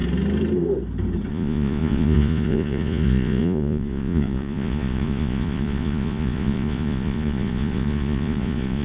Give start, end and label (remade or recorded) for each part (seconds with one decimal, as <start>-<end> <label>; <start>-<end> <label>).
0.0-1.3 recorded; 1.3-8.8 remade